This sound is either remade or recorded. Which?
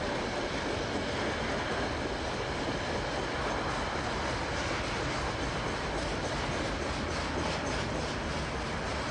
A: recorded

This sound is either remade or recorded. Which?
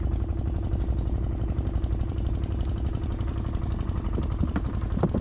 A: recorded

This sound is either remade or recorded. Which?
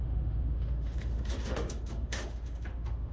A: remade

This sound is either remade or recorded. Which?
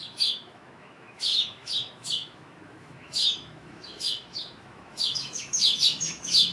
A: remade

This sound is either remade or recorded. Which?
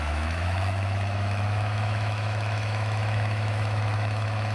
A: remade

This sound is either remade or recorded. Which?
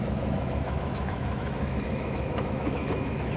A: remade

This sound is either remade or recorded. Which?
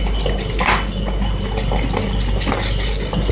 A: recorded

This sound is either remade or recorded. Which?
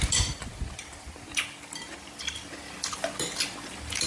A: recorded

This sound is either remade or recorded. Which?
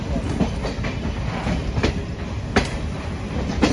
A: recorded